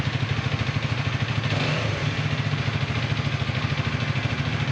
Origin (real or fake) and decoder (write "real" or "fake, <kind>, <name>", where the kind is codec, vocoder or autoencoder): real